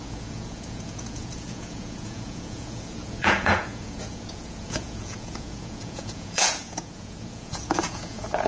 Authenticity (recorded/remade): remade